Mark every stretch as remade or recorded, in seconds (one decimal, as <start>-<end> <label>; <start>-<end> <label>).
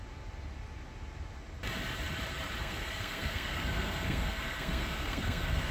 0.0-2.6 recorded; 2.6-5.7 remade